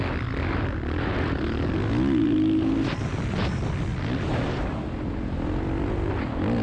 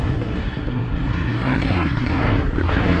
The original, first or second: first